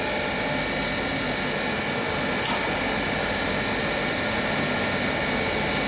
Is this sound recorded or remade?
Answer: recorded